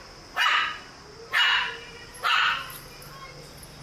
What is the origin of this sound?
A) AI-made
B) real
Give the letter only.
B